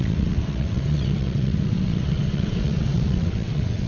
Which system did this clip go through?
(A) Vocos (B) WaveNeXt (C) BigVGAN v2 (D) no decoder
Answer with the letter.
B